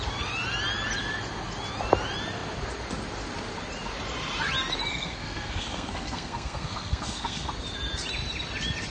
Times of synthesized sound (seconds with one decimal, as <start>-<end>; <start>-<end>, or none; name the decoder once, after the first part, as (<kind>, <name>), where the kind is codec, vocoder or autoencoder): 4.9-7.5 (codec, SNAC)